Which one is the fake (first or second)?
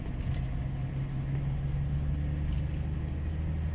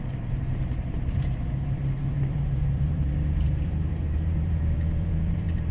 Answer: second